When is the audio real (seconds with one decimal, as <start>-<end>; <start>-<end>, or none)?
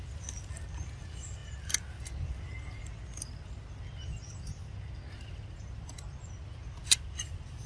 0.0-7.7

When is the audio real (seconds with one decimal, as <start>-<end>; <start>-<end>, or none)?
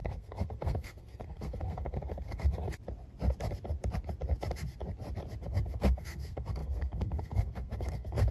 2.6-5.7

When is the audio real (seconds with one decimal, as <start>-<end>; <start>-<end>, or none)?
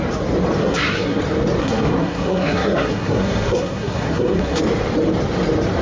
0.0-0.6; 1.2-1.6; 4.6-5.8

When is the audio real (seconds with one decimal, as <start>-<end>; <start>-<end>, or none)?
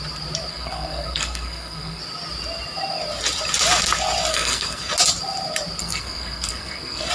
0.0-0.5; 2.0-4.3; 4.9-5.8